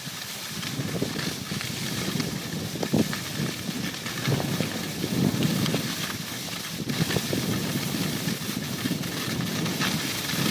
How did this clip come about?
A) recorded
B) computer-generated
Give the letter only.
A